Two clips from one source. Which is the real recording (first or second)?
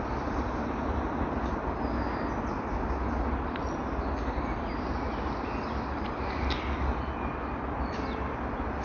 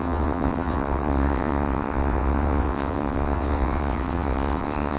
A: first